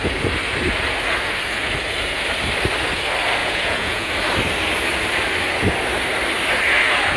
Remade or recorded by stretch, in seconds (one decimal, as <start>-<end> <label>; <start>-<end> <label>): 0.0-3.4 recorded; 3.4-4.1 remade; 4.1-7.2 recorded